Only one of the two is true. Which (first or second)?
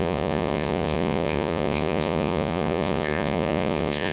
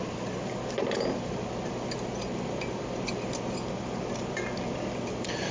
second